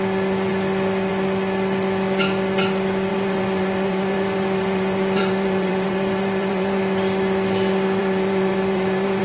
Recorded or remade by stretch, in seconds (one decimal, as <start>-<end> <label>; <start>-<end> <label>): 0.0-3.1 recorded; 3.1-6.8 remade; 6.8-8.0 recorded; 8.0-9.2 remade